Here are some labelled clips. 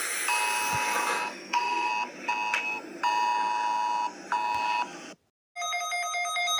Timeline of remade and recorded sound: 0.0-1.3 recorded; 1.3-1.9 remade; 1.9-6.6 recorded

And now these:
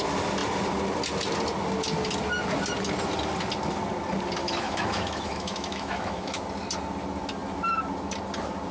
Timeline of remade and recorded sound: 0.0-4.4 recorded; 4.4-6.4 remade; 6.4-8.7 recorded